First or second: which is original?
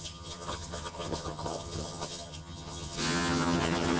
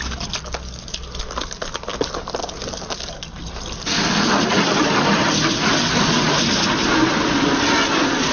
second